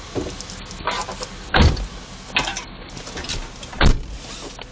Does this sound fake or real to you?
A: real